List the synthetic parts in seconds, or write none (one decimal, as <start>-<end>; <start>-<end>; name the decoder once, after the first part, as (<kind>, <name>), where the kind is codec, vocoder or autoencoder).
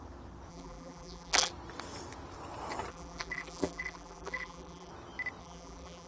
0.5-1.5 (vocoder, BigVGAN v2); 2.9-4.9; 5.4-6.1